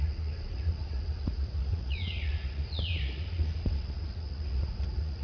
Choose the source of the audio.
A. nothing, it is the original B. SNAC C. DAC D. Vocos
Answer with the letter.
D